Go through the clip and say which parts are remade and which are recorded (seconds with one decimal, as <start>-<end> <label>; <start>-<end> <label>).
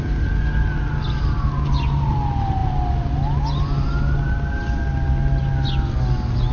0.0-6.5 recorded